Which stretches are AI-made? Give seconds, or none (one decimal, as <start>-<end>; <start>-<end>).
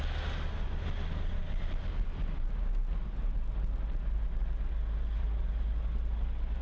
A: none